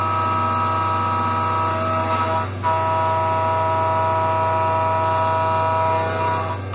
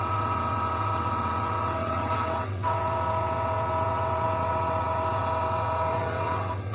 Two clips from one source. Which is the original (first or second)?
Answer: first